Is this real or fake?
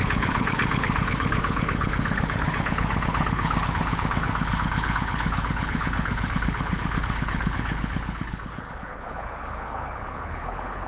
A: fake